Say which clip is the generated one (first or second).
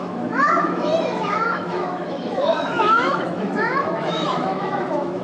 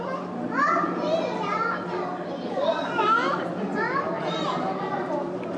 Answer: first